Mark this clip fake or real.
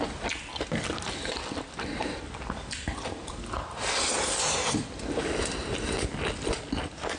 real